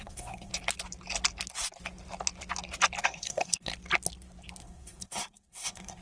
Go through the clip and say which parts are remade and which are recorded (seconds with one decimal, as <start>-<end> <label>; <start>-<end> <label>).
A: 0.0-0.5 remade; 0.5-3.0 recorded; 3.0-3.7 remade; 3.7-4.6 recorded; 4.6-6.0 remade